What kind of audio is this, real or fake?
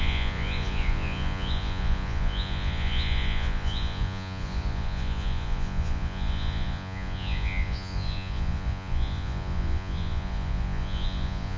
fake